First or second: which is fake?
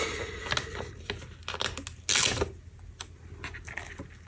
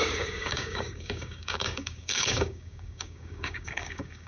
second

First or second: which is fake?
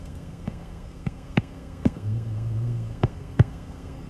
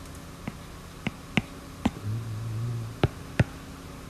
first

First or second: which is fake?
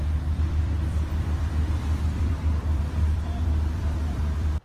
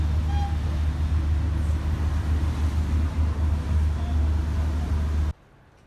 first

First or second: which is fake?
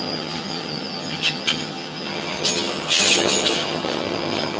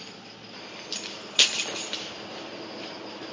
first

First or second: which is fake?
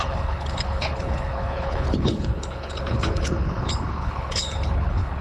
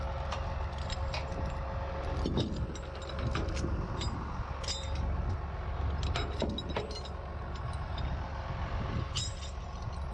first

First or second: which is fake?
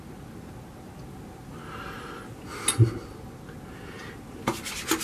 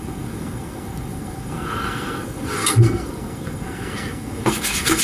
second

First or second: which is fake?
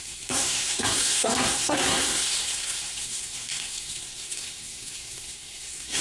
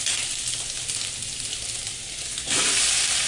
first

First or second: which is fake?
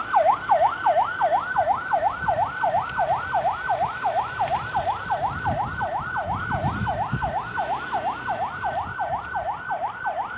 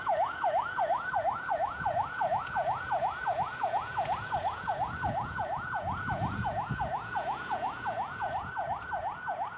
second